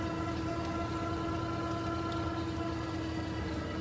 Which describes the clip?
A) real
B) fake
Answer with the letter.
A